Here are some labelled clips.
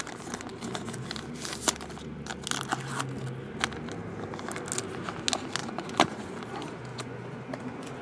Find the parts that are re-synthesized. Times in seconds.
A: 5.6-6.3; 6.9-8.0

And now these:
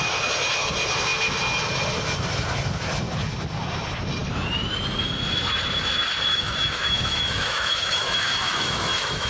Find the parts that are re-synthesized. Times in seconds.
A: 6.3-9.3

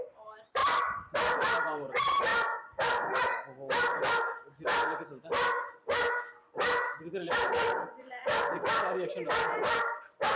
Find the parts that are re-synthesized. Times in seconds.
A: 0.0-2.3; 7.0-10.4

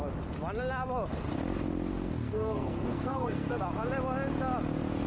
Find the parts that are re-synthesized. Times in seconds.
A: 1.9-3.6

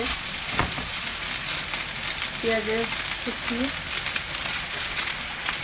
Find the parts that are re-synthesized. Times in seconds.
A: 0.0-1.1; 4.5-5.6

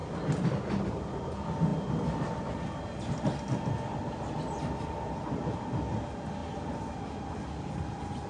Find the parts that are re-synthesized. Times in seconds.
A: none

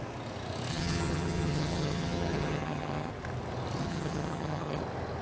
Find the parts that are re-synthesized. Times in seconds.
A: 0.7-3.1; 3.8-4.8

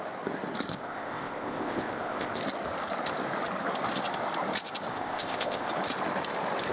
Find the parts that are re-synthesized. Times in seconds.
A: 0.7-2.4; 4.9-5.7